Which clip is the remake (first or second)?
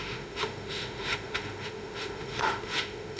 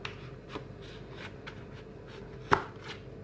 first